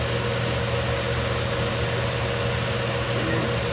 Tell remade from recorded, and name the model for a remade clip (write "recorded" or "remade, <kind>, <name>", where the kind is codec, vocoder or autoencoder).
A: recorded